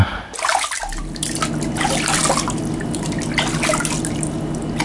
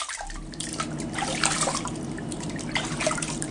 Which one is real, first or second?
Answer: first